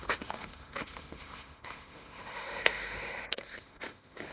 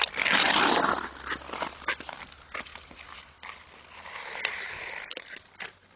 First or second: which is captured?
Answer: second